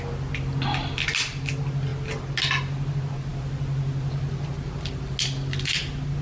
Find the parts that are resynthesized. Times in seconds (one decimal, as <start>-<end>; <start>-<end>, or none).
none

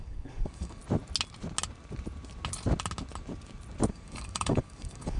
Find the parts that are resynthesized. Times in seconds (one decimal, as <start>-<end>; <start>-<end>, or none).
0.0-0.8; 3.9-5.2

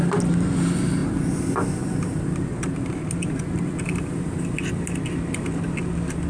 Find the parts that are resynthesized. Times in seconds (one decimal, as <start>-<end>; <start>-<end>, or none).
none

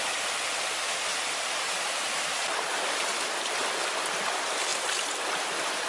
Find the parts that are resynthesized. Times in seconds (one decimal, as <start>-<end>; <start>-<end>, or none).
1.1-3.5; 4.7-5.5

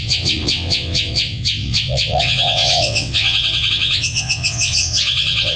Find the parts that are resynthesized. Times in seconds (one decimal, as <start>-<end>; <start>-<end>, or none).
0.0-5.6

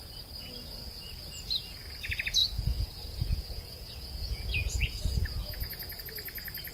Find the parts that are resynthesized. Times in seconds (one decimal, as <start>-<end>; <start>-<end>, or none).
2.4-6.0

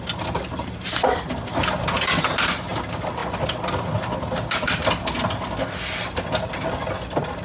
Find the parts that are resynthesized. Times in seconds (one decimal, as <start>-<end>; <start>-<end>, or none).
none